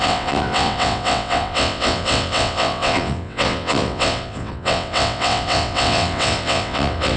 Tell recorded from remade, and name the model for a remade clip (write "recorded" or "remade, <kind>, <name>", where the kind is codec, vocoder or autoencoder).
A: remade, vocoder, WaveNeXt